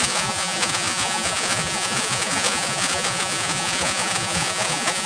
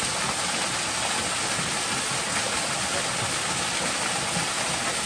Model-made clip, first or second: first